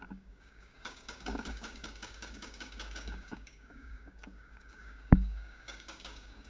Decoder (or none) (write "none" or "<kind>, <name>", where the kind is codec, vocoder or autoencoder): codec, DAC